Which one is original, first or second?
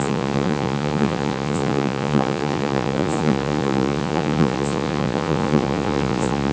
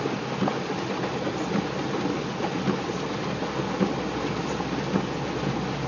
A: second